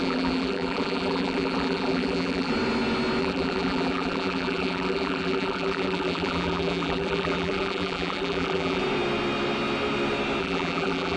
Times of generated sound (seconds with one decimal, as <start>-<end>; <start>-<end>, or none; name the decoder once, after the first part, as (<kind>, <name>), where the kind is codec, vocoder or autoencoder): 0.0-2.5 (vocoder, BigVGAN v2); 3.2-8.8; 10.4-11.2